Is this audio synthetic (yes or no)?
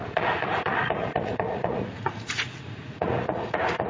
yes